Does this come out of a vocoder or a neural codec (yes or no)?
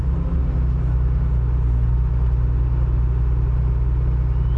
no